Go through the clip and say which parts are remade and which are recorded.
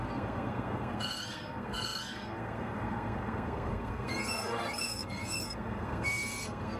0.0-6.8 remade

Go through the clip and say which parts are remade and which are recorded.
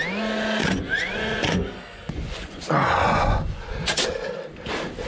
0.0-0.6 recorded; 0.6-3.7 remade; 3.7-5.1 recorded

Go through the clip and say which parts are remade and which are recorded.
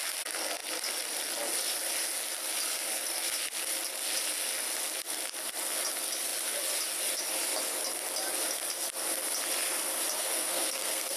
0.0-10.2 recorded; 10.2-11.2 remade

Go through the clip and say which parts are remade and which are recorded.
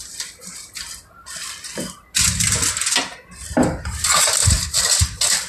0.0-5.5 recorded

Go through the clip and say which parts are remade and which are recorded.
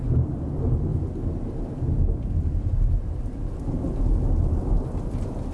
0.0-5.5 recorded